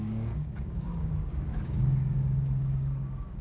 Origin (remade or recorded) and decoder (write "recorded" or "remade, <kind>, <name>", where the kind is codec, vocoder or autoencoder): remade, codec, DAC